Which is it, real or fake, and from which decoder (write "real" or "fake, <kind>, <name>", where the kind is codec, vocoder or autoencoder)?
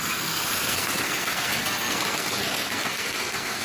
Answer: fake, codec, SNAC